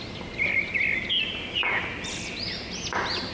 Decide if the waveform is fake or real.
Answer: real